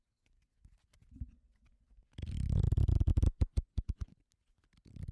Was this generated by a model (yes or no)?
no